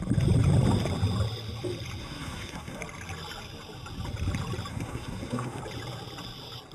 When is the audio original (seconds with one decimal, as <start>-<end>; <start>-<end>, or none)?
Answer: 0.0-2.0; 2.8-4.7; 5.6-6.7